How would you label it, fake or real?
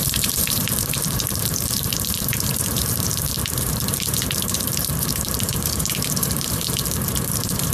fake